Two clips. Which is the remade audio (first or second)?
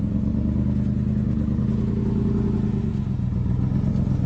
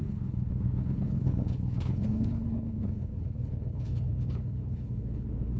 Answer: second